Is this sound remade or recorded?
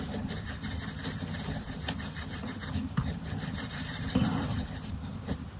remade